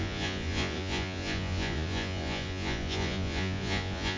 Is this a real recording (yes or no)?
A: no